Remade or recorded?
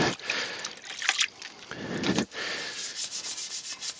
recorded